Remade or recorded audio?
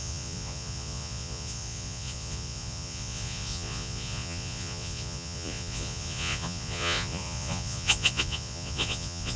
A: remade